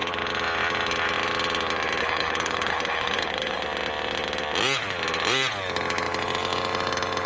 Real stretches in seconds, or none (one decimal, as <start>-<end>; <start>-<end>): 0.0-2.0; 3.6-7.3